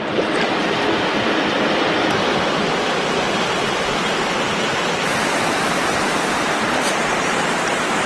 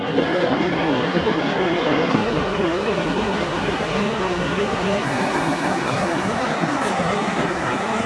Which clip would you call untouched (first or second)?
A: first